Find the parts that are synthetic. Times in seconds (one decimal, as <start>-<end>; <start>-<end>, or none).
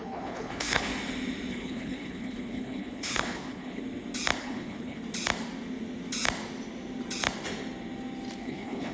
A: 0.0-0.9; 1.5-3.8; 4.4-5.0; 8.4-8.9